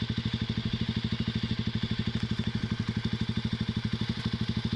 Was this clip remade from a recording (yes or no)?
no